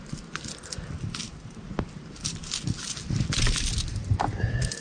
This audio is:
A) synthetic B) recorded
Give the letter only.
B